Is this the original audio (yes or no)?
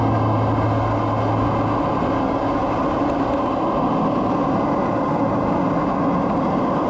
yes